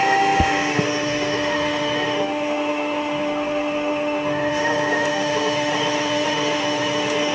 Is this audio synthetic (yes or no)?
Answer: yes